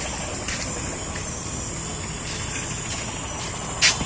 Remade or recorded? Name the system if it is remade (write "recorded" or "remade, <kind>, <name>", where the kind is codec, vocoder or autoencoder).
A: recorded